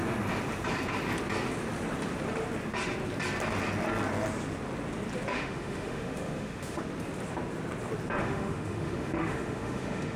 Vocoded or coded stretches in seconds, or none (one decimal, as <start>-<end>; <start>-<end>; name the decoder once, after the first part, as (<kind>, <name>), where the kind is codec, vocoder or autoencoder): 5.3-6.8 (autoencoder, DAC-VAE); 8.2-10.2